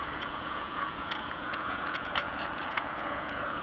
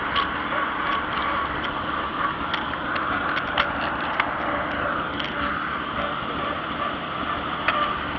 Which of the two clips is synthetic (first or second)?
first